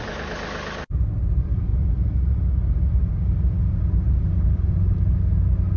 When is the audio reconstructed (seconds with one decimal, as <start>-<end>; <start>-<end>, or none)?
none